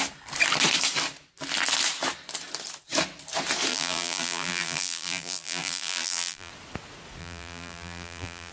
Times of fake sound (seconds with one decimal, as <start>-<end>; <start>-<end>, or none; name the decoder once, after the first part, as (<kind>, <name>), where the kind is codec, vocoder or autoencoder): 3.7-6.5 (vocoder, BigVGAN v2); 7.2-8.5